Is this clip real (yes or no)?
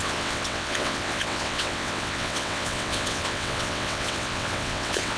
no